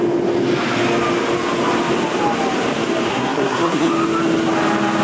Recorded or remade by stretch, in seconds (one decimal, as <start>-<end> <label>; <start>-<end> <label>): 0.0-3.1 recorded; 3.1-3.9 remade; 3.9-5.0 recorded

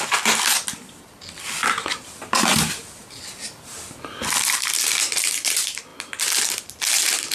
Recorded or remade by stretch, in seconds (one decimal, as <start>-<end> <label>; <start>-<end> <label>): 0.0-7.3 recorded

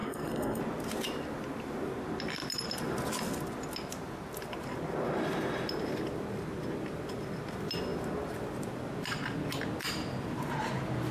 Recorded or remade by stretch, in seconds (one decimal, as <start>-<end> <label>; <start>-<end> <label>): 0.0-0.6 remade; 0.6-11.1 recorded